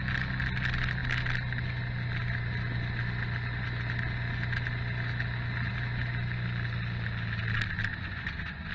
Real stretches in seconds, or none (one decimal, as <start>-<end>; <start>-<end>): 0.0-7.9